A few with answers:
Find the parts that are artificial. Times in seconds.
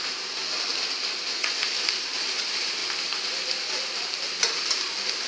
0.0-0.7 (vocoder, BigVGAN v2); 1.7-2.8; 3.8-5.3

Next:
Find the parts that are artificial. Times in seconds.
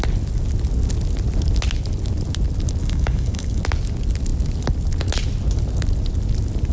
2.8-3.6 (codec, DAC)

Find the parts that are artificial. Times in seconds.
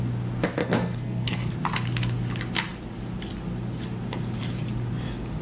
0.6-1.5 (codec, SNAC)